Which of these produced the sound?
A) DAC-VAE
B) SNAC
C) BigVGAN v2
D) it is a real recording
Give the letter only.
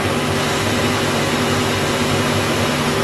D